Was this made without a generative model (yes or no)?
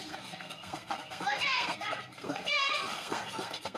no